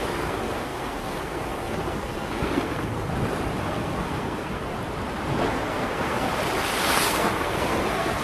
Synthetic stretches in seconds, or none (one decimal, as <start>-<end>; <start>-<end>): 0.0-3.1; 3.6-4.7; 5.5-6.3; 6.8-8.2